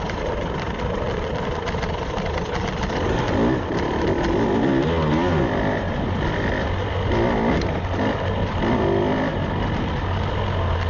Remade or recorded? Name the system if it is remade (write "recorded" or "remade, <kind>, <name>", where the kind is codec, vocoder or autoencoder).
recorded